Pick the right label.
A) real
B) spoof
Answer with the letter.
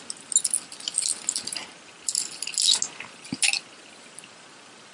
A